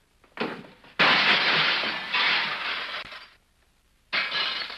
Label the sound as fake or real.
real